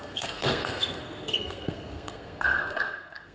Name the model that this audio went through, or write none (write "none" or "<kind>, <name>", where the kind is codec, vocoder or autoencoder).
codec, SNAC